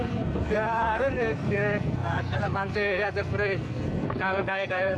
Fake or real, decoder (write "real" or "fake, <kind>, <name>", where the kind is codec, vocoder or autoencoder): fake, codec, SNAC